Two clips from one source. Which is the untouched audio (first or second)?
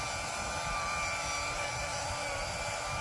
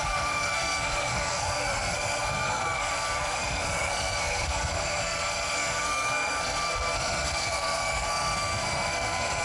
first